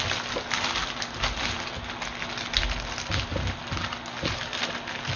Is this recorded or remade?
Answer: recorded